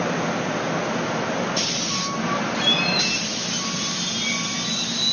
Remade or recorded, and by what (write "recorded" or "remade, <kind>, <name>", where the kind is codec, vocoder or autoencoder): recorded